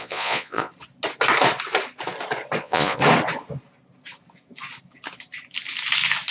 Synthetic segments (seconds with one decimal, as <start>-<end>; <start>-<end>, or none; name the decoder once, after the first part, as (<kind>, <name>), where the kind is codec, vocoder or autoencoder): 0.0-0.7 (vocoder, Vocos); 2.6-3.0